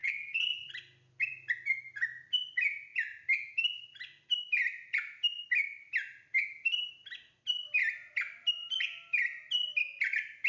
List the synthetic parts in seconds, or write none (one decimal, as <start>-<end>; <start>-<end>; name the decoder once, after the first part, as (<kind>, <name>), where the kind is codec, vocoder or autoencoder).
0.0-0.7 (vocoder, HiFi-GAN)